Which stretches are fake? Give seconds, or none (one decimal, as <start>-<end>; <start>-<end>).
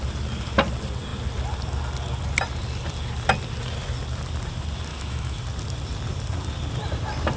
4.9-5.4